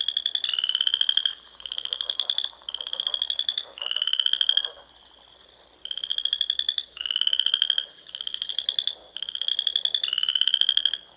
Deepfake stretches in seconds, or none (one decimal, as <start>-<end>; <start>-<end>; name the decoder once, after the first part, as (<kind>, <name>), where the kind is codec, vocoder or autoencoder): 1.3-4.9 (codec, DAC); 6.1-8.5; 9.0-9.5; 10.3-11.2